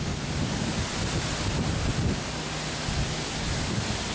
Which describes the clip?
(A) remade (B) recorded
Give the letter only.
B